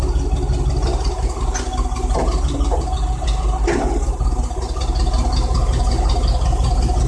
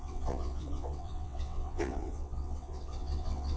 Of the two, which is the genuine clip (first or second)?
first